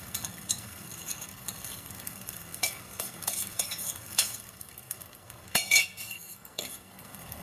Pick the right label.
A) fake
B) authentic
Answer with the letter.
A